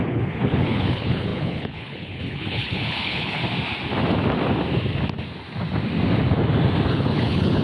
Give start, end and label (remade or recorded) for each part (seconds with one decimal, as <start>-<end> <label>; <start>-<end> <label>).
0.0-3.4 remade; 3.4-6.9 recorded; 6.9-7.6 remade